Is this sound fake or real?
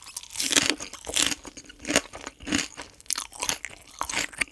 real